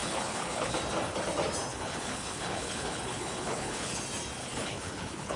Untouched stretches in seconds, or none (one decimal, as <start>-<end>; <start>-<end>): 0.8-1.7; 4.0-4.4